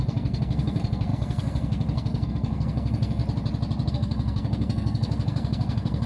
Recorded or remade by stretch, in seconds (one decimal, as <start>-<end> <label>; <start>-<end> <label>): 0.0-3.2 remade; 3.2-3.9 recorded; 3.9-6.1 remade